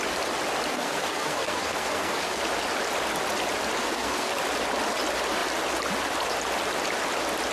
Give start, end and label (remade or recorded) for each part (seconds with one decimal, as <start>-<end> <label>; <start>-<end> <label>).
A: 0.0-0.7 recorded; 0.7-2.4 remade; 2.4-3.8 recorded; 3.8-4.3 remade; 4.3-7.5 recorded